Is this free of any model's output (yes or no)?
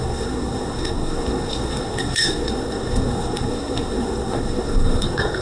no